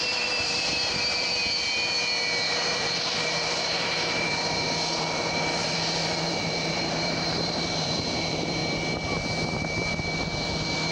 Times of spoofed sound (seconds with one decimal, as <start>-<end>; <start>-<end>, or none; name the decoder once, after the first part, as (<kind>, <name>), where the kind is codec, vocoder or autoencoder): 0.0-1.4 (vocoder, BigVGAN v2); 2.5-8.6; 9.5-10.9